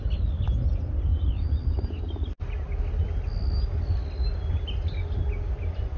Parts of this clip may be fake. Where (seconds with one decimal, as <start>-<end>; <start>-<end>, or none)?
none